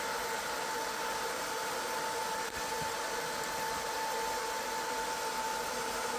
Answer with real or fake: real